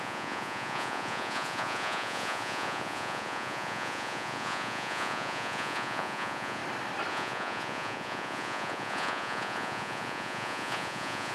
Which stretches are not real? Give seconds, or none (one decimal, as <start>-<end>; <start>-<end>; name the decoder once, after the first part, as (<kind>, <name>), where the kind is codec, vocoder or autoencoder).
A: 0.0-6.6 (vocoder, Vocos); 7.1-11.3